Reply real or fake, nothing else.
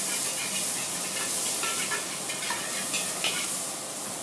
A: real